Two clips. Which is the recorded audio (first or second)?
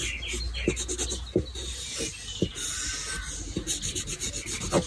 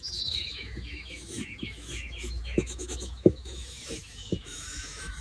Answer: first